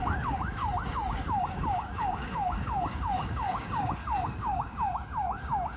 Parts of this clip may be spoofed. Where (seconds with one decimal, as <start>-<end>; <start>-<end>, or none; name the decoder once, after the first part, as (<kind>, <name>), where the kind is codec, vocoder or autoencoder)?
0.0-0.6 (codec, DAC); 1.1-5.8